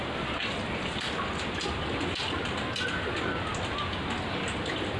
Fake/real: real